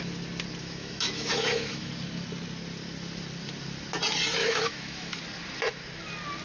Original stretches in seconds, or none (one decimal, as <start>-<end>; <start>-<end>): 0.0-0.6; 1.9-4.4; 5.2-6.4